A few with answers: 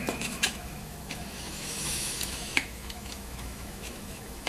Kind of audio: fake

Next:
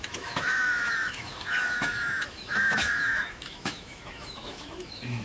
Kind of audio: fake